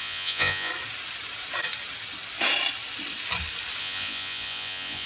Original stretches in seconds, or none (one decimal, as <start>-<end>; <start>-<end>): 0.7-3.8